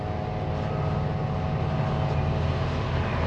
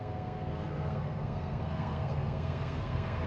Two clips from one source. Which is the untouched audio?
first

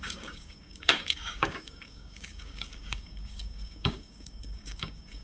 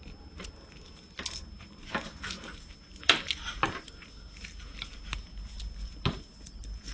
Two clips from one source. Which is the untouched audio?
second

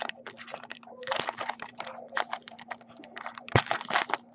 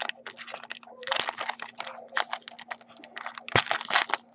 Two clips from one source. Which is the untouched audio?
second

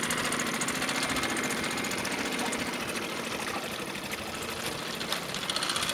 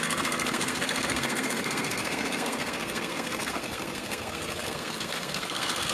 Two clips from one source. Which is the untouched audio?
first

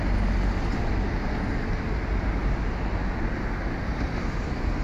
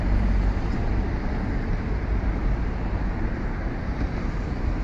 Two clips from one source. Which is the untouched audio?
first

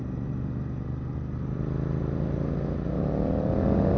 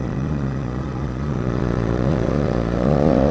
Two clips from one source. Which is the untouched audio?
first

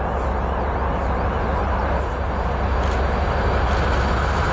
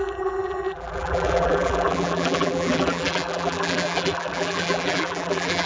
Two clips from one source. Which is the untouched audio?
first